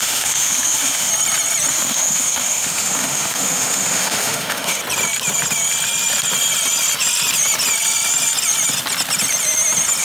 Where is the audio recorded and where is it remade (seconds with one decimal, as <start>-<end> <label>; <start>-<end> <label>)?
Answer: 0.0-1.1 remade; 1.1-1.7 recorded; 1.7-4.8 remade; 4.8-10.0 recorded

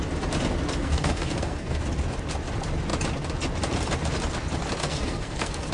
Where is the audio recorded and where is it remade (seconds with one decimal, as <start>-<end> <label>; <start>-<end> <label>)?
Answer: 0.0-0.8 recorded; 0.8-1.8 remade; 1.8-4.8 recorded; 4.8-5.7 remade

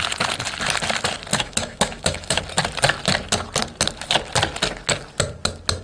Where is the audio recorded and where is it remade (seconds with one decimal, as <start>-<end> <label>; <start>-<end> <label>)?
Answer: 0.0-1.3 recorded; 1.3-2.4 remade; 2.4-5.8 recorded

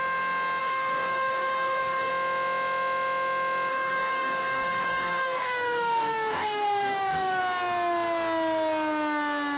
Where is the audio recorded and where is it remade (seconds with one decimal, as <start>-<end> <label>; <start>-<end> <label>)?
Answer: 0.0-0.6 recorded; 0.6-2.1 remade; 2.1-3.7 recorded; 3.7-7.4 remade; 7.4-9.6 recorded

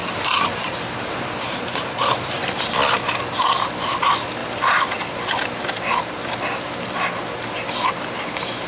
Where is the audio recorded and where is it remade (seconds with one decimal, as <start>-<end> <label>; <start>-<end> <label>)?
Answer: 0.0-2.4 remade; 2.4-4.4 recorded; 4.4-5.7 remade; 5.7-8.7 recorded

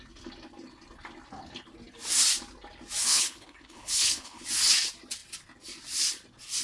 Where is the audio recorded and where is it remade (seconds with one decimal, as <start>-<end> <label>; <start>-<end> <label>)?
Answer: 0.0-3.0 recorded; 3.0-4.4 remade; 4.4-6.6 recorded